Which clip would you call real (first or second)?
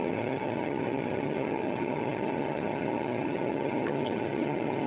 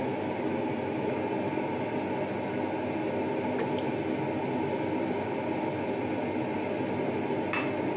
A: second